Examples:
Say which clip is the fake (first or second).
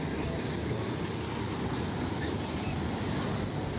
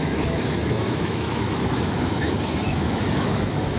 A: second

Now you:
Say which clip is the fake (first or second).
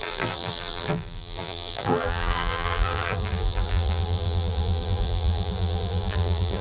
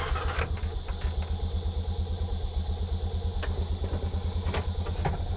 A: first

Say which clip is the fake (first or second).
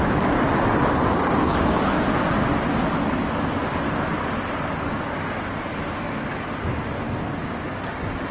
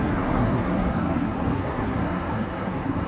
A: second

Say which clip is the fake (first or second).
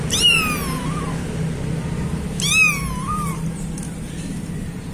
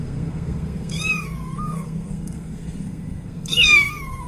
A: second